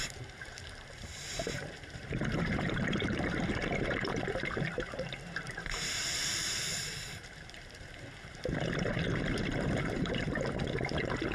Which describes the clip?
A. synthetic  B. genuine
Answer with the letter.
A